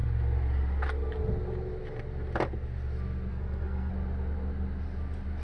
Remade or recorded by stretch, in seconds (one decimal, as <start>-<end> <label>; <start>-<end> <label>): 0.0-3.3 recorded; 3.3-3.9 remade; 3.9-5.4 recorded